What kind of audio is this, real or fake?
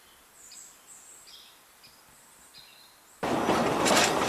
fake